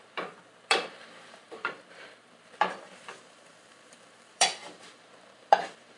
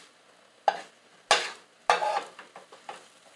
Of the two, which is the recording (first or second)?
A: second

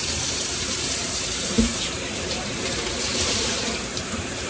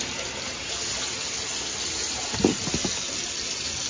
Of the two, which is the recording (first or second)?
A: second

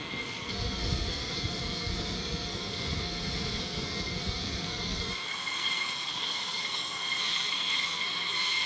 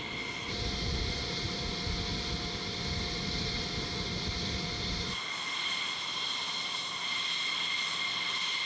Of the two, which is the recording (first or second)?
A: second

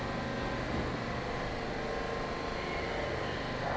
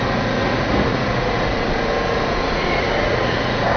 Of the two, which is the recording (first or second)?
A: first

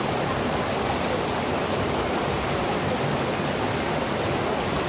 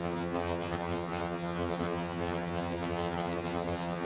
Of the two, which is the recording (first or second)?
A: first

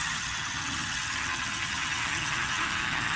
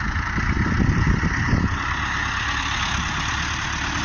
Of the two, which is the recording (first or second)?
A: second